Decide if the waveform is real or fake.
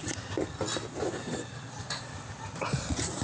real